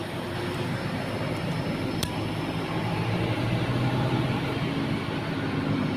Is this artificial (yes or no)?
no